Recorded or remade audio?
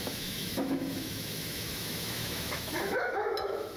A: remade